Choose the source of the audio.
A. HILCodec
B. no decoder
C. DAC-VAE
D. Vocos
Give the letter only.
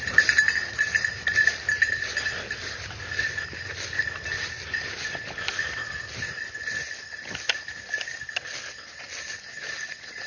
B